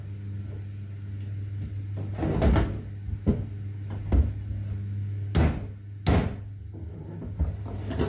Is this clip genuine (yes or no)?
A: yes